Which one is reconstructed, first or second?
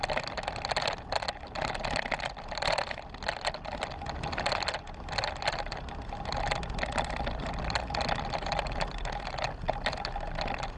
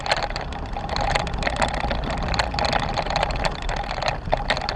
second